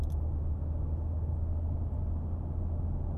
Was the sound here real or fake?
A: real